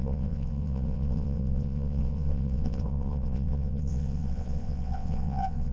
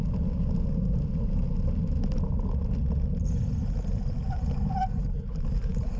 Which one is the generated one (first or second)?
first